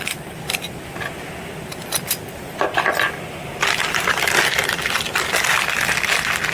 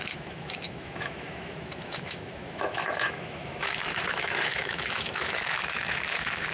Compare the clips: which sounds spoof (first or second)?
second